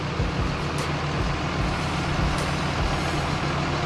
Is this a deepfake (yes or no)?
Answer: no